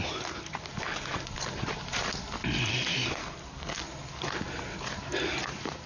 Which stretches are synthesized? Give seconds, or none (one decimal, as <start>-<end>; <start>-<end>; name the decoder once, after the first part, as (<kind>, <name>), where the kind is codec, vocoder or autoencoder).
3.2-3.8 (codec, SNAC)